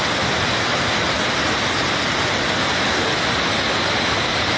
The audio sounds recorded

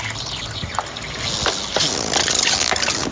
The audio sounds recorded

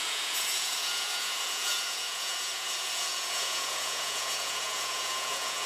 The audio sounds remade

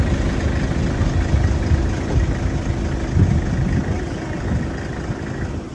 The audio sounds recorded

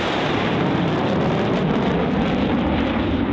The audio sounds remade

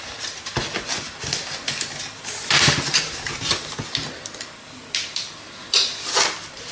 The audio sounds recorded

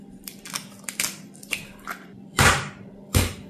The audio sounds remade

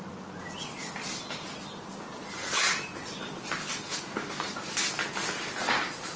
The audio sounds recorded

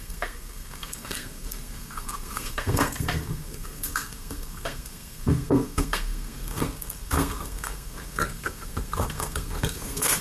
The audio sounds remade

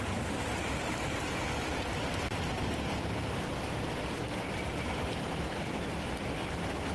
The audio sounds remade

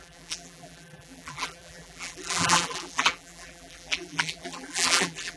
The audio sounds remade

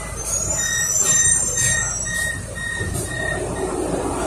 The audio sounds recorded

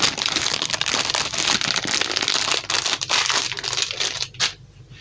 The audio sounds recorded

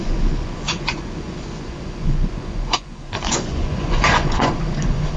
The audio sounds remade